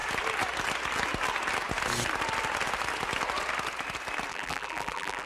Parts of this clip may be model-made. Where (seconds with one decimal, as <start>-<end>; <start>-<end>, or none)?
4.3-5.3